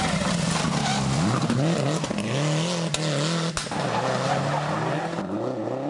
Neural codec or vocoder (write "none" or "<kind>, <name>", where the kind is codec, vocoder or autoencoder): none